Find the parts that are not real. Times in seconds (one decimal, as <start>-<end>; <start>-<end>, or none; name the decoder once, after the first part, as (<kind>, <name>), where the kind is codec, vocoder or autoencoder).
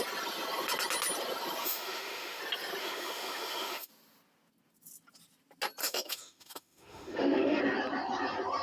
1.6-2.4 (autoencoder, DAC-VAE); 2.8-3.9; 5.8-7.6